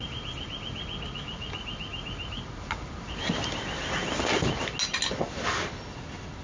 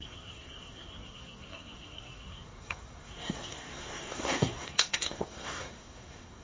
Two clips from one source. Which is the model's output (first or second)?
second